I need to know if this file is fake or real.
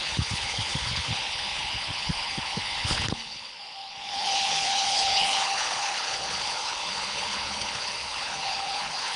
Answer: fake